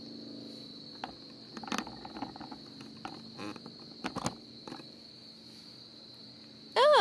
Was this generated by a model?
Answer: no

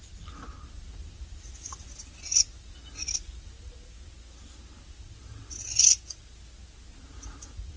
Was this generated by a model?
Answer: no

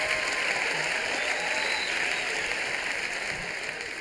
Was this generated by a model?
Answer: no